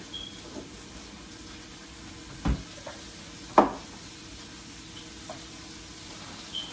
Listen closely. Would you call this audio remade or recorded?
recorded